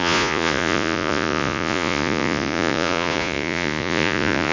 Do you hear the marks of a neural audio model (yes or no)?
yes